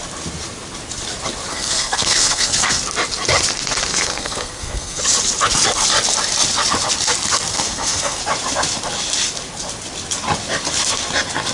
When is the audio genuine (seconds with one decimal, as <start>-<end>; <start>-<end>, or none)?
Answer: 0.0-1.5; 2.8-3.9; 5.0-7.5; 8.2-11.5